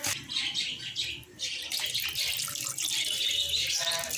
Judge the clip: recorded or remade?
recorded